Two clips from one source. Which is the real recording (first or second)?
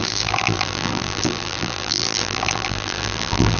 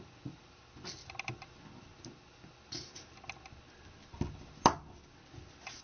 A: second